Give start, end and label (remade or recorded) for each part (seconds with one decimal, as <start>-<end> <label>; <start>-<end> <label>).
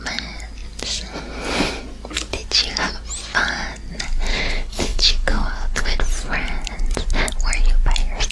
0.0-4.3 recorded; 4.3-6.0 remade; 6.0-8.3 recorded